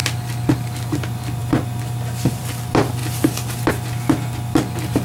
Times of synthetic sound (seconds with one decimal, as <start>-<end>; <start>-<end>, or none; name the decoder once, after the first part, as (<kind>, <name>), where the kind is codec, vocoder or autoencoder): none